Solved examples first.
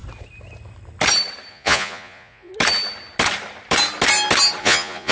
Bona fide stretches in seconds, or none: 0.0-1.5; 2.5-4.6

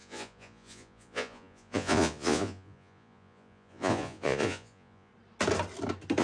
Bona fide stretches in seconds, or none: 5.1-6.2

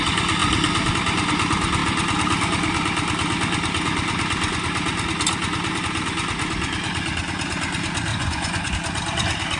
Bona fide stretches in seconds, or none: 0.0-8.1; 8.7-9.6

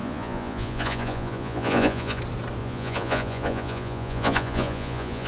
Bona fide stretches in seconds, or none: 2.2-2.6

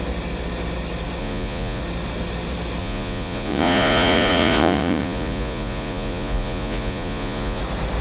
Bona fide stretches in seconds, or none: 0.0-1.2; 1.8-2.8; 7.6-8.0